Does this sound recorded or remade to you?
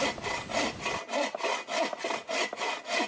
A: recorded